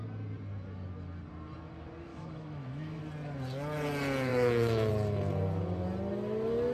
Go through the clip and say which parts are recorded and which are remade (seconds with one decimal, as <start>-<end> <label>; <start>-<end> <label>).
0.0-2.1 recorded; 2.1-3.0 remade; 3.0-4.3 recorded; 4.3-4.9 remade; 4.9-6.7 recorded